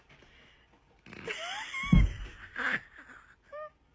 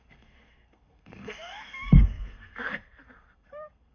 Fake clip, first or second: second